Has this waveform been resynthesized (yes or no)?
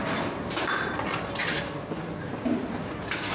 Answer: no